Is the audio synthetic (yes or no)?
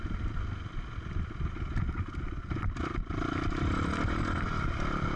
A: no